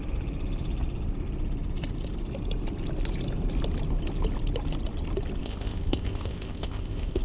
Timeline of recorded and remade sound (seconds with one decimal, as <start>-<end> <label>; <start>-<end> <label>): 0.0-5.4 recorded; 5.4-7.2 remade